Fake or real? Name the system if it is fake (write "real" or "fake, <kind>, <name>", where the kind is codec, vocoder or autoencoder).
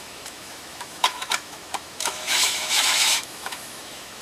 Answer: fake, autoencoder, DAC-VAE